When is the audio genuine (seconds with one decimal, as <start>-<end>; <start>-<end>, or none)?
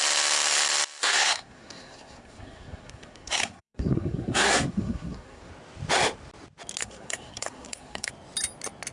0.0-1.0; 5.5-6.8; 8.1-8.9